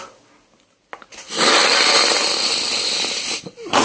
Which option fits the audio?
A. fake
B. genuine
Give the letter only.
B